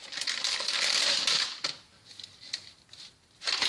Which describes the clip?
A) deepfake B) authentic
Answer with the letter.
B